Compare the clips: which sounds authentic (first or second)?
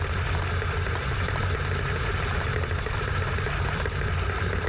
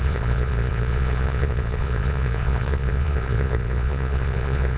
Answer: first